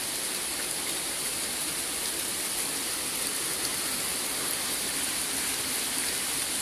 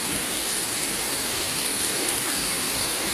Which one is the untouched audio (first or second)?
first